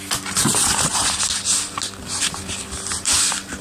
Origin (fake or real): real